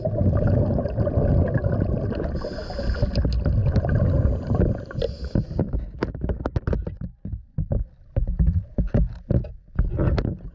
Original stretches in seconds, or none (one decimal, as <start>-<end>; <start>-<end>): 0.0-10.5